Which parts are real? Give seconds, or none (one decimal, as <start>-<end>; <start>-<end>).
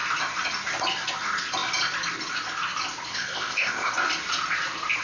0.0-3.1; 3.9-5.0